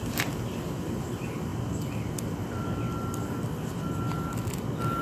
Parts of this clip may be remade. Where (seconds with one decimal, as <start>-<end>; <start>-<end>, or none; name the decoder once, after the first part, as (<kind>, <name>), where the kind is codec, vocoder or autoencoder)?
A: none